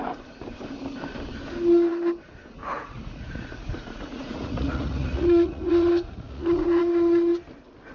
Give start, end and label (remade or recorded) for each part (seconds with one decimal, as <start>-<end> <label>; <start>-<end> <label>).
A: 0.0-2.6 recorded; 2.6-6.8 remade; 6.8-7.9 recorded